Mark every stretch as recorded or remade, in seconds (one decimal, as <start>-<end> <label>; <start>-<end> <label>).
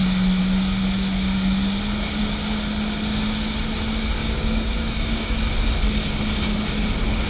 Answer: 0.0-4.2 recorded; 4.2-5.4 remade; 5.4-7.3 recorded